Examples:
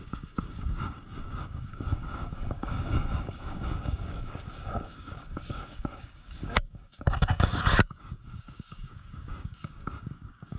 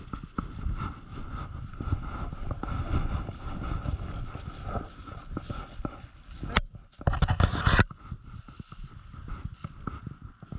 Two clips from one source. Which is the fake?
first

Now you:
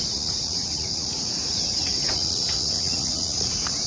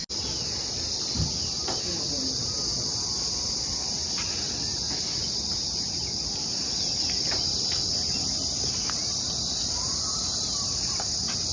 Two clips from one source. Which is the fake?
first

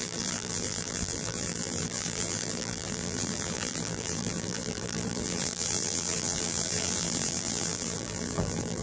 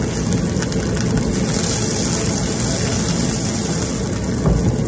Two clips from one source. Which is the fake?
first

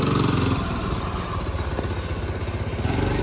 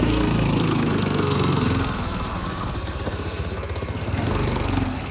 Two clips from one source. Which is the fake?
second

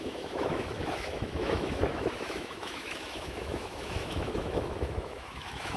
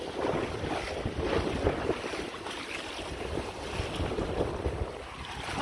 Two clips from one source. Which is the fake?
first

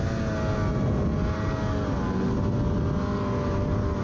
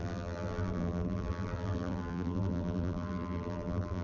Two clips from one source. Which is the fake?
second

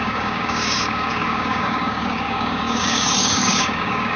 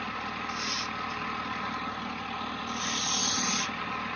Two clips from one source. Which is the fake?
first